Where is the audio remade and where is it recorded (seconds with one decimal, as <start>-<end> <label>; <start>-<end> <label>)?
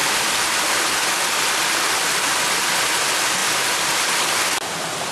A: 0.0-5.1 recorded